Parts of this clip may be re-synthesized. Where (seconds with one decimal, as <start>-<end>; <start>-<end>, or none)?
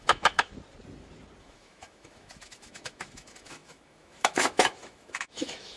0.0-0.5; 1.4-5.8